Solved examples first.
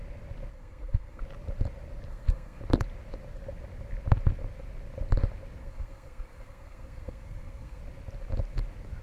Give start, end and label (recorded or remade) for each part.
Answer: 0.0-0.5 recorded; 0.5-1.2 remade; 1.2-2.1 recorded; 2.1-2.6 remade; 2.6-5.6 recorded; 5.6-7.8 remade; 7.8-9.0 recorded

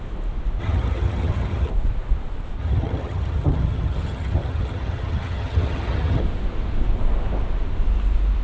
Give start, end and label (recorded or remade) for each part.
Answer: 0.0-0.6 recorded; 0.6-1.7 remade; 1.7-2.6 recorded; 2.6-6.2 remade; 6.2-8.4 recorded

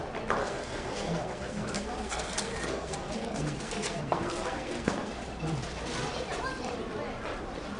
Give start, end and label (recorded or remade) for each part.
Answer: 0.0-0.4 recorded; 0.4-5.1 remade; 5.1-7.8 recorded

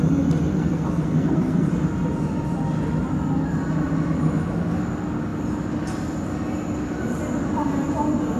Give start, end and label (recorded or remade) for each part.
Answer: 0.0-0.5 recorded; 0.5-1.7 remade; 1.7-8.4 recorded

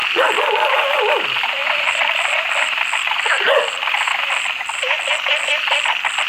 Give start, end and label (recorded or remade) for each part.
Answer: 0.0-6.3 recorded

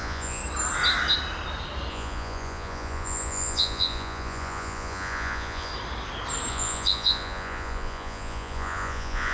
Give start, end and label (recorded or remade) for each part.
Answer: 0.0-0.4 remade; 0.4-1.9 recorded; 1.9-5.7 remade; 5.7-6.5 recorded; 6.5-9.3 remade

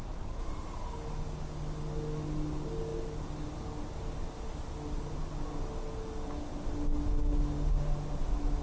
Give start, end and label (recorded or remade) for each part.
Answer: 0.0-8.6 recorded

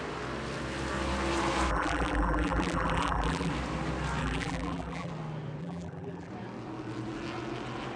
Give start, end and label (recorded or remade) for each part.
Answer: 0.0-1.7 recorded; 1.7-3.5 remade; 3.5-4.2 recorded; 4.2-5.1 remade; 5.1-5.6 recorded; 5.6-6.3 remade; 6.3-8.0 recorded